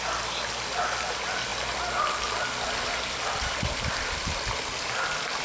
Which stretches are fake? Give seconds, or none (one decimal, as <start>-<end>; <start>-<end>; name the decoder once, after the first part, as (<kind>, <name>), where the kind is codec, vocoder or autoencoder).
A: none